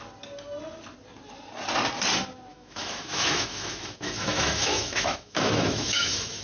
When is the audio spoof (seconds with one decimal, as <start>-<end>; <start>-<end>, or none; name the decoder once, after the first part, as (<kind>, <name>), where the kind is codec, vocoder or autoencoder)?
2.5-6.4 (autoencoder, DAC-VAE)

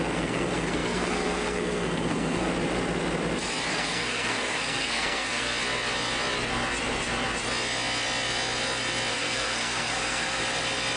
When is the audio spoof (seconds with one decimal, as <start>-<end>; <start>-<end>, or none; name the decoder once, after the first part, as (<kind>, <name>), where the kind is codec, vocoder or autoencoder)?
0.0-2.5 (codec, SNAC); 3.7-5.5; 9.1-10.4

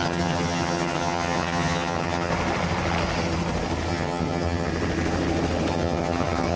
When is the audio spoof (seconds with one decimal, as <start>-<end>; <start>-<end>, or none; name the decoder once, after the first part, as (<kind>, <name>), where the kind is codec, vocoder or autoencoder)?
0.0-2.3 (vocoder, HiFi-GAN); 3.9-4.7; 5.7-6.6

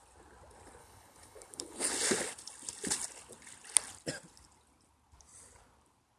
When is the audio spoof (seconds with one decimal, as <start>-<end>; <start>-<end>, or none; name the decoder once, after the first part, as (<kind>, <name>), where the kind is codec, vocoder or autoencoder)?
0.8-1.9 (codec, HILCodec)

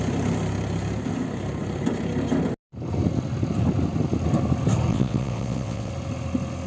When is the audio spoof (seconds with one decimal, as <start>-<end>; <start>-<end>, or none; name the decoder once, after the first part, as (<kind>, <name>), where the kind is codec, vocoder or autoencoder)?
4.9-5.9 (vocoder, WaveNeXt)